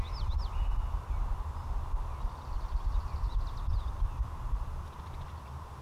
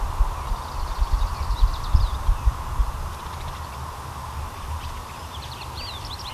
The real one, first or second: first